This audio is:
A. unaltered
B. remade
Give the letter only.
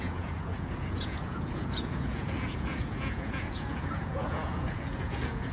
B